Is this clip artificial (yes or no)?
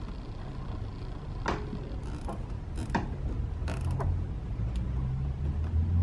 no